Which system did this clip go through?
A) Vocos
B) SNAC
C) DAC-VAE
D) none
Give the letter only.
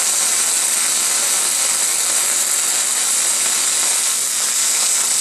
D